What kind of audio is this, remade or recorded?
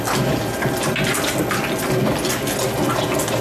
recorded